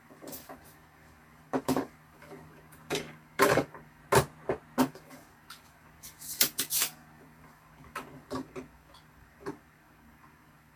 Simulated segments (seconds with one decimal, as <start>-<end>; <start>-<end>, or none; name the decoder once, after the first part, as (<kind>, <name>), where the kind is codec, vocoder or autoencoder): 0.0-4.0 (codec, DAC); 4.8-10.8